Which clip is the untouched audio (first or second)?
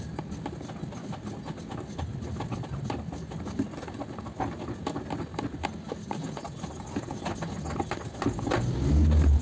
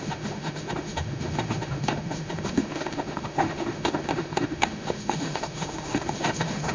first